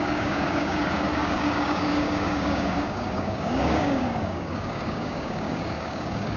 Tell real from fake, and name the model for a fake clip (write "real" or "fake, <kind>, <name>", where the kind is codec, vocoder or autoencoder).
fake, codec, DAC